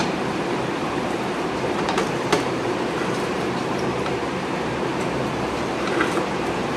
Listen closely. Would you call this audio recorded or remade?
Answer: remade